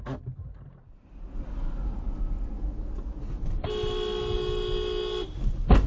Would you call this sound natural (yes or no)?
yes